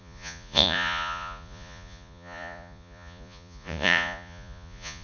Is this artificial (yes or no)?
yes